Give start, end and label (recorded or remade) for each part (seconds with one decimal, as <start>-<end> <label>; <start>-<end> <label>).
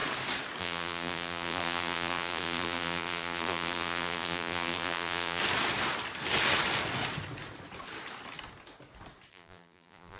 0.0-0.6 recorded; 0.6-5.4 remade; 5.4-9.3 recorded; 9.3-10.2 remade